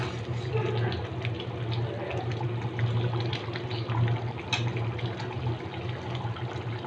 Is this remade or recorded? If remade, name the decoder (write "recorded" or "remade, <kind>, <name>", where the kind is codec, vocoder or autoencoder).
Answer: recorded